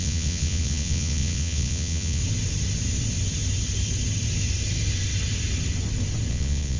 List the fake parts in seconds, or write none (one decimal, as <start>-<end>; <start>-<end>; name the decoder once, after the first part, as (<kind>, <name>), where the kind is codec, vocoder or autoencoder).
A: 0.0-2.2 (vocoder, Vocos); 6.3-6.8